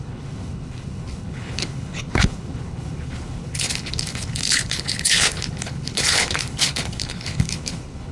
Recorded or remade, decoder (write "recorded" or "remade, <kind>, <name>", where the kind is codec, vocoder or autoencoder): remade, codec, HILCodec